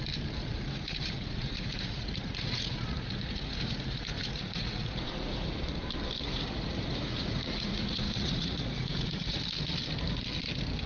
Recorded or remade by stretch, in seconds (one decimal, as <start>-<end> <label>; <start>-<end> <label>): 0.0-0.4 recorded; 0.4-5.6 remade; 5.6-6.2 recorded; 6.2-9.4 remade; 9.4-10.9 recorded